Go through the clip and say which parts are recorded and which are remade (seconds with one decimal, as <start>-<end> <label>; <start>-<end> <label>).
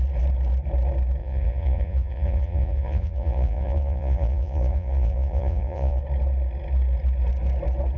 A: 0.0-1.2 recorded; 1.2-6.0 remade; 6.0-8.0 recorded